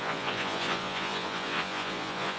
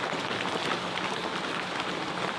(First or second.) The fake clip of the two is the first